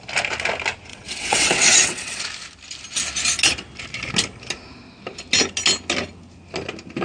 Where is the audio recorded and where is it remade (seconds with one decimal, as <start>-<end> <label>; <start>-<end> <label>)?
0.0-0.9 recorded; 0.9-2.2 remade; 2.2-7.0 recorded